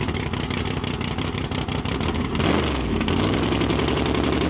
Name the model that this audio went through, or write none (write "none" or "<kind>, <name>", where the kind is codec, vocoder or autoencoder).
none